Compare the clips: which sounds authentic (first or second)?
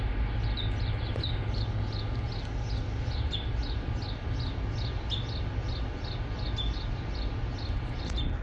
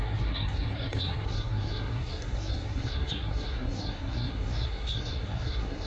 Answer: first